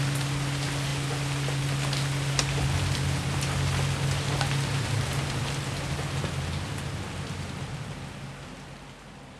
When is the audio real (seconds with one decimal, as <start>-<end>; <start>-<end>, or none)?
0.0-9.4